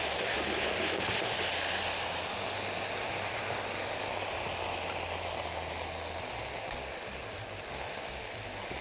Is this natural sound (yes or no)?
yes